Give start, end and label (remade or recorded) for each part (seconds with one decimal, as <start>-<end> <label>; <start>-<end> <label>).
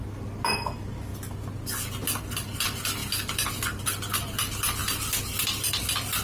0.0-6.2 recorded